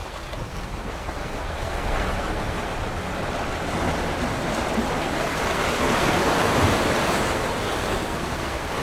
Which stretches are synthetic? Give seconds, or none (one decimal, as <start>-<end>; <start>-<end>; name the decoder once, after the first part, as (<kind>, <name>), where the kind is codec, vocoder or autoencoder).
0.0-2.7 (codec, SNAC); 5.0-6.5; 7.2-8.8